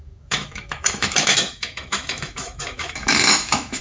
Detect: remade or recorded remade